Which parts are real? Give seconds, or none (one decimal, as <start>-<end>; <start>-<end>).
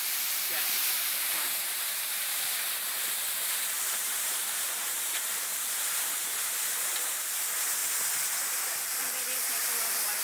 3.2-4.0; 7.8-10.2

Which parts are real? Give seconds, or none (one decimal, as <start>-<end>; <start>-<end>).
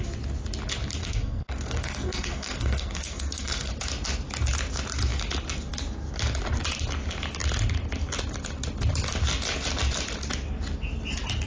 0.0-1.0; 3.7-11.5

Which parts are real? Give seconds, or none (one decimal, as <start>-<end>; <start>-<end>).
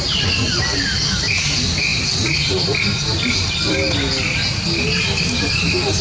0.0-6.0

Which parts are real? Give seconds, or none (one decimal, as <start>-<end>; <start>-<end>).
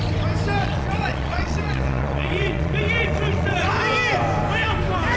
0.0-0.6; 3.7-5.2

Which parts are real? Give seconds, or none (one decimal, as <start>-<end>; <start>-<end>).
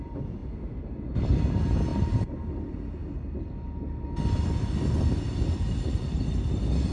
0.0-6.9